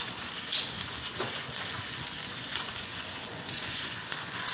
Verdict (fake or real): fake